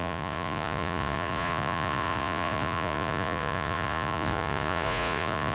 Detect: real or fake fake